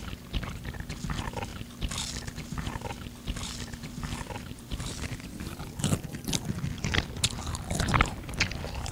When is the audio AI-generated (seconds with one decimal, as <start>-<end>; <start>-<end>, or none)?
1.5-6.2; 7.4-8.9